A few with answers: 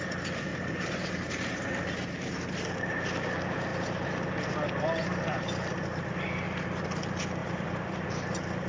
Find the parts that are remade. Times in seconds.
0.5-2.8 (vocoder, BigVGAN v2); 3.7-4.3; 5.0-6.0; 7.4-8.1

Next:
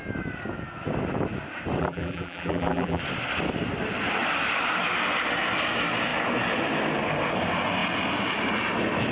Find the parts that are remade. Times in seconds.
1.8-3.0 (vocoder, BigVGAN v2)

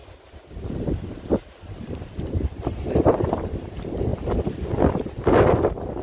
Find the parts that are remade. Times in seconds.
1.3-4.1 (vocoder, BigVGAN v2)

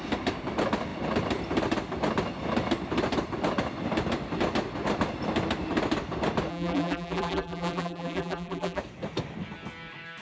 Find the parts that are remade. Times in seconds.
6.5-8.8 (vocoder, BigVGAN v2)

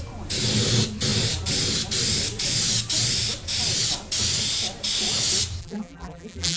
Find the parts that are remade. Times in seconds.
5.6-6.6 (vocoder, BigVGAN v2)